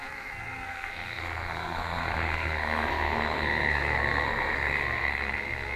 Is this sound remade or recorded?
remade